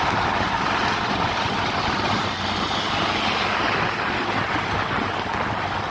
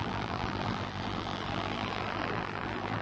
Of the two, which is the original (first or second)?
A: first